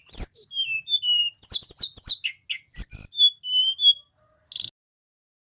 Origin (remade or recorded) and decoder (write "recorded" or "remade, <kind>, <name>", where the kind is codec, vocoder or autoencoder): recorded